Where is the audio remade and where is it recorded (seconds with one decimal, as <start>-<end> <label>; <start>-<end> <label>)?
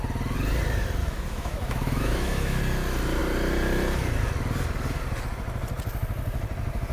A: 0.0-1.0 recorded; 1.0-2.6 remade; 2.6-6.9 recorded